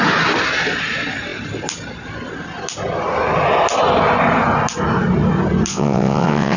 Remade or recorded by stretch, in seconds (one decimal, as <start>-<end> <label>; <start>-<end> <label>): 0.0-5.7 recorded; 5.7-6.6 remade